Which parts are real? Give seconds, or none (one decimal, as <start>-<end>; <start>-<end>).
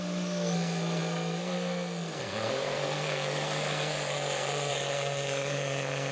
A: none